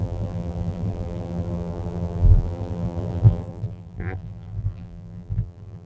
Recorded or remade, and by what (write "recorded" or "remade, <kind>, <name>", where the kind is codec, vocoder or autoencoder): remade, vocoder, BigVGAN v2